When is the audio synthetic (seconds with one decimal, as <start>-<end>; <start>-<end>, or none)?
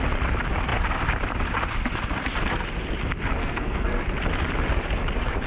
3.4-4.0